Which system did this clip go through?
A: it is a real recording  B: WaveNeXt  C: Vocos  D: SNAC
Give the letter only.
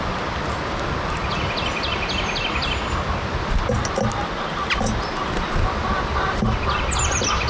A